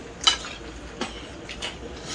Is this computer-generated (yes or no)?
no